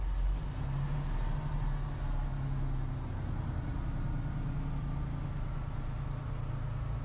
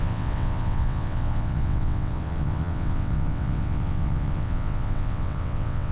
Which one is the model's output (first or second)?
second